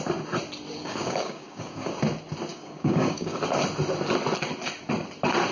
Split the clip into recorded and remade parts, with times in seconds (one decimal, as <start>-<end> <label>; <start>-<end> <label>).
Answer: 0.0-0.8 recorded; 0.8-1.9 remade; 1.9-2.5 recorded; 2.5-3.4 remade; 3.4-5.5 recorded